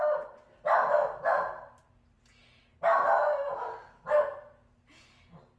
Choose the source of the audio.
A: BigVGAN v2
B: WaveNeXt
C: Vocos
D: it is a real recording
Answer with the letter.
D